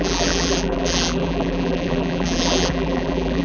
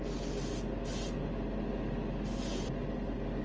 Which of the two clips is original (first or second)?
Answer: second